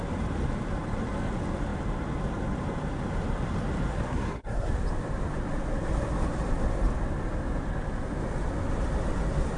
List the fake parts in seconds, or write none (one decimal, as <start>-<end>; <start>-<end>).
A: 3.9-4.7